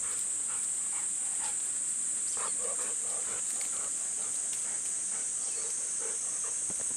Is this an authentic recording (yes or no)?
yes